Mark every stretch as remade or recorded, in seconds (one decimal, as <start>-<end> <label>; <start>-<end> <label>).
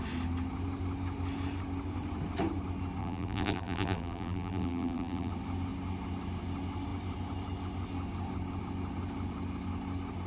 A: 0.0-3.0 recorded; 3.0-5.3 remade; 5.3-10.3 recorded